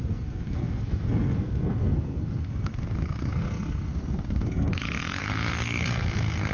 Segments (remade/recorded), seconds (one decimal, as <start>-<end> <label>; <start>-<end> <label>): 0.0-4.7 remade; 4.7-5.2 recorded; 5.2-6.5 remade

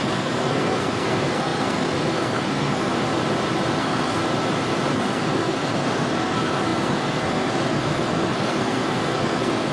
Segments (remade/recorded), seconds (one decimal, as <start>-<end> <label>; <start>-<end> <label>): 0.0-2.9 remade; 2.9-3.8 recorded; 3.8-4.2 remade; 4.2-4.9 recorded; 4.9-9.7 remade

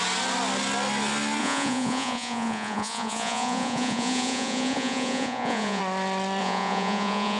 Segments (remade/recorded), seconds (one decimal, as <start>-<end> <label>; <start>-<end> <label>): 0.0-1.4 recorded; 1.4-5.8 remade; 5.8-6.4 recorded; 6.4-7.4 remade

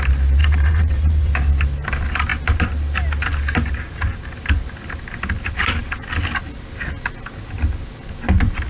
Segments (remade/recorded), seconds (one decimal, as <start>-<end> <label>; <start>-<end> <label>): 0.0-0.4 recorded; 0.4-1.3 remade; 1.3-8.7 recorded

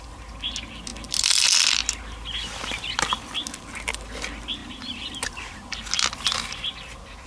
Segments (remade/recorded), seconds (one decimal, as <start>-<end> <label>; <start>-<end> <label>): 0.0-7.3 recorded

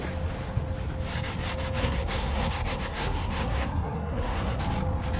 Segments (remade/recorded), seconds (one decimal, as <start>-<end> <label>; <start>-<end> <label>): 0.0-1.8 recorded; 1.8-4.6 remade; 4.6-5.2 recorded

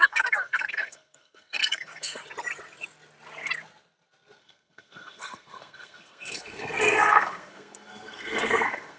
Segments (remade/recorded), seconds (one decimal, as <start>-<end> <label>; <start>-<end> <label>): 0.0-2.2 remade; 2.2-4.4 recorded; 4.4-9.0 remade